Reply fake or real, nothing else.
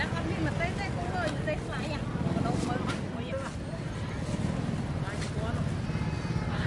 real